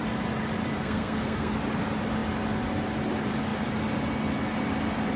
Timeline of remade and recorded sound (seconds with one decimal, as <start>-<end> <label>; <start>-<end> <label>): 0.0-0.7 recorded; 0.7-1.5 remade; 1.5-5.2 recorded